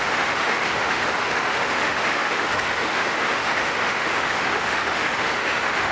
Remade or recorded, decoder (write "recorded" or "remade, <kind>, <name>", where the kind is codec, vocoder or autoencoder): remade, autoencoder, DAC-VAE